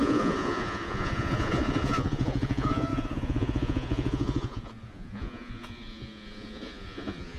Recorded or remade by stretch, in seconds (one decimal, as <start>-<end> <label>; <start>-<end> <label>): 0.0-7.4 remade